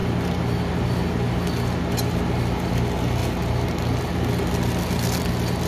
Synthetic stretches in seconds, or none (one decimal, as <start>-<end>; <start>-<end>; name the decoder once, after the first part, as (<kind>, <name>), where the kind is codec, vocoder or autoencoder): none